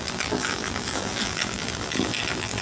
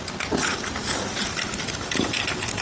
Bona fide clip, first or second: second